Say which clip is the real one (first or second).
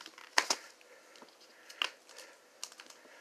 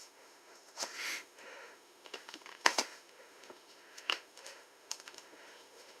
first